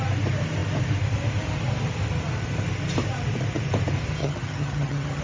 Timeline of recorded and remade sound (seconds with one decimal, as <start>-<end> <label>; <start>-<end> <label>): 0.0-4.2 recorded; 4.2-5.2 remade